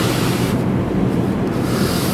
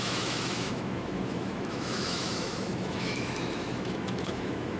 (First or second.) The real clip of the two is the first